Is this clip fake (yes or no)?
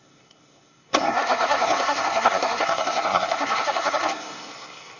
yes